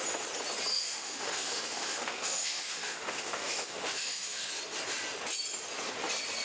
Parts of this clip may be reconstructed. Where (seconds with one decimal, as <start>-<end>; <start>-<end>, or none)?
0.7-4.5